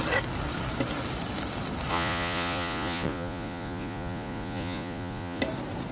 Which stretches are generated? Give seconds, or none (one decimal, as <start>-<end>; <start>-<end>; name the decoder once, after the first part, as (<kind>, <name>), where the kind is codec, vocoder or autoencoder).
1.9-5.4 (vocoder, Vocos)